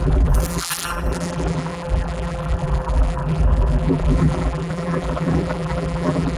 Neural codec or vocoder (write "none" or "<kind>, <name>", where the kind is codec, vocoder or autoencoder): vocoder, BigVGAN v2